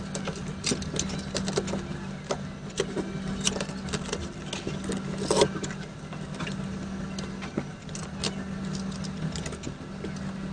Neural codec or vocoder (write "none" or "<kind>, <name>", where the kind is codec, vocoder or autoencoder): none